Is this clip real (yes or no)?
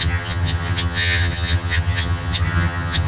no